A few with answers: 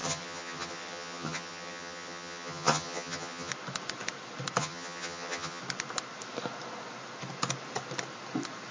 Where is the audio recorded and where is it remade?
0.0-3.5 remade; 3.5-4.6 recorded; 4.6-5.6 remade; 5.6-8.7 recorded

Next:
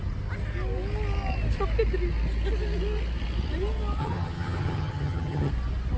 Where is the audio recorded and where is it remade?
0.0-4.0 recorded; 4.0-5.5 remade; 5.5-6.0 recorded

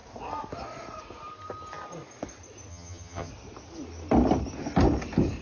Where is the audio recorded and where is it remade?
0.0-2.7 recorded; 2.7-3.3 remade; 3.3-5.4 recorded